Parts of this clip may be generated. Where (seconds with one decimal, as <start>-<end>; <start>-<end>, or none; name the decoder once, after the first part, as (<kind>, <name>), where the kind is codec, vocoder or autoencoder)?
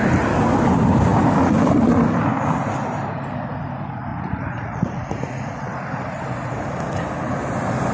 4.1-5.6 (vocoder, Vocos)